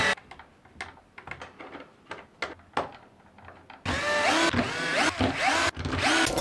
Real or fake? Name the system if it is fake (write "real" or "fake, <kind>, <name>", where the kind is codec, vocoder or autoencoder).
real